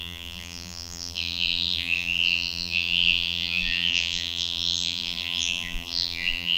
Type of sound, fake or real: fake